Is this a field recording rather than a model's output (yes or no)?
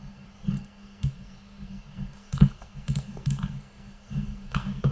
no